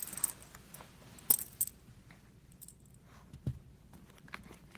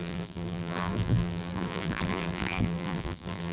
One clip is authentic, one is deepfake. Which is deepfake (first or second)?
second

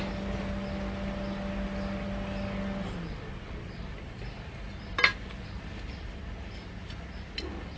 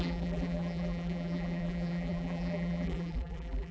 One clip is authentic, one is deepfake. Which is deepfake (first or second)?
second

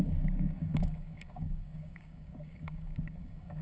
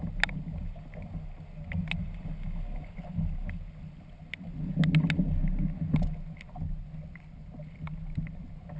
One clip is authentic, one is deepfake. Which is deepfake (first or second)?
first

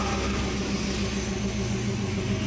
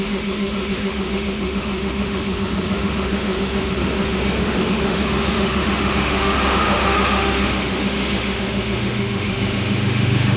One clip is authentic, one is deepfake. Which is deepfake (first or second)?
second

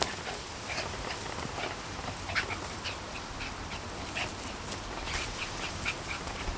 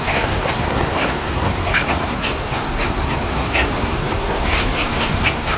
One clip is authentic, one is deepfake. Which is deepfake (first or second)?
second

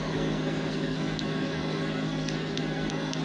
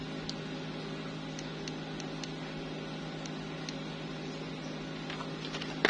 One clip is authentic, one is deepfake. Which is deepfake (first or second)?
first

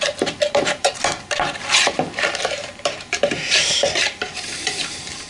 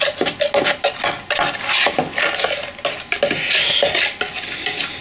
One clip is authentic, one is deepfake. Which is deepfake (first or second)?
first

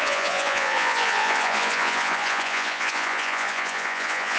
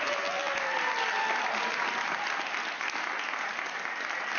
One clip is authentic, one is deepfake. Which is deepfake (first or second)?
first